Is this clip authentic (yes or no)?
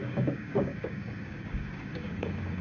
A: no